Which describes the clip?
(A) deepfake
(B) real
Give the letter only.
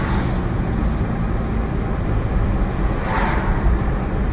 B